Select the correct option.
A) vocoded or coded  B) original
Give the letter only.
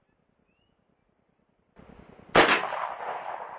B